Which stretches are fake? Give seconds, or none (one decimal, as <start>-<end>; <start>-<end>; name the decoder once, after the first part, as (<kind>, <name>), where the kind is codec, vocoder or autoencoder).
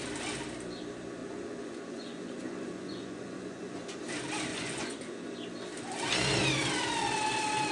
1.2-4.0 (vocoder, Vocos); 4.5-5.3